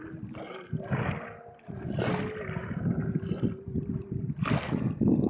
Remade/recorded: recorded